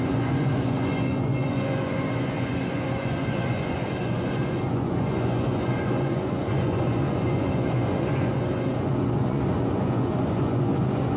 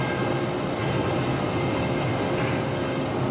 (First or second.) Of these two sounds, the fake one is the first